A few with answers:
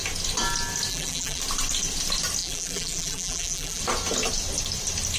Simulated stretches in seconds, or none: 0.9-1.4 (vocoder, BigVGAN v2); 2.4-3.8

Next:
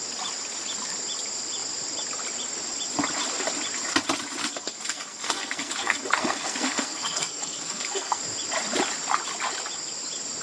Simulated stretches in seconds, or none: 4.4-8.2 (codec, SNAC)